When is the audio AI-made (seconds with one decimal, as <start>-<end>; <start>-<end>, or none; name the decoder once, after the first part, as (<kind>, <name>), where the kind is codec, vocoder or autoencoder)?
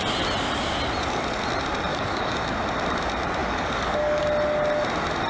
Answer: 1.9-2.4 (codec, DAC); 3.4-4.2